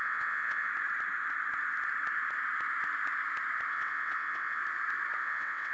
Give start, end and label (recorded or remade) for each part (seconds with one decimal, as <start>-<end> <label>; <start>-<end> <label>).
0.0-0.7 remade; 0.7-3.7 recorded; 3.7-4.6 remade; 4.6-5.2 recorded; 5.2-5.7 remade